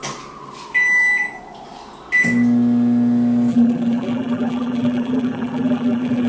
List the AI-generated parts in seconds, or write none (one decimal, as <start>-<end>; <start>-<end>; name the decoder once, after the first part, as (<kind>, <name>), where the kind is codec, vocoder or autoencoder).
3.5-6.3 (vocoder, BigVGAN v2)